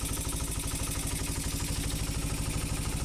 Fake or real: real